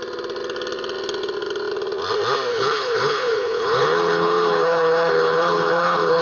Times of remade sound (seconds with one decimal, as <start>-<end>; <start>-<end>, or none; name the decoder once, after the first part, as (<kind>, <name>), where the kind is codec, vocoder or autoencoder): 2.5-6.2 (codec, HILCodec)